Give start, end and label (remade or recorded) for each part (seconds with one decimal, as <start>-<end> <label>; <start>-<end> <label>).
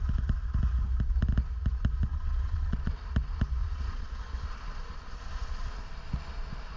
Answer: 0.0-2.1 recorded; 2.1-2.9 remade; 2.9-3.6 recorded; 3.6-4.2 remade; 4.2-6.8 recorded